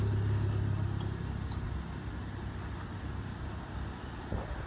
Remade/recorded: recorded